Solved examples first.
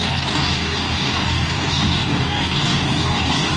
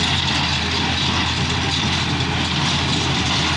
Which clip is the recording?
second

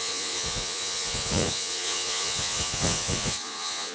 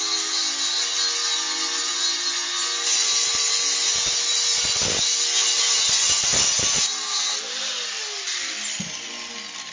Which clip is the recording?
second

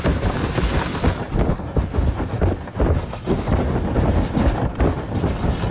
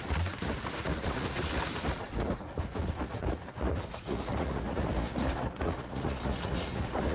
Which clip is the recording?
first